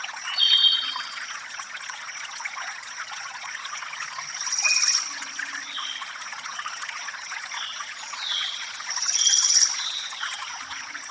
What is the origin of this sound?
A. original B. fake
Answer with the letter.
B